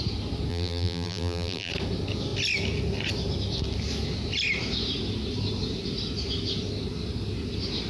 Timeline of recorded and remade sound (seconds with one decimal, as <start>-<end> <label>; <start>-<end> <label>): 0.0-0.5 recorded; 0.5-1.7 remade; 1.7-7.9 recorded